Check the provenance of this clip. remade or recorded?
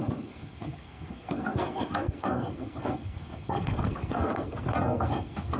remade